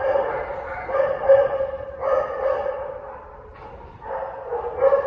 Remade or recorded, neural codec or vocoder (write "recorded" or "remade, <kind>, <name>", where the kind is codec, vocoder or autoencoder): recorded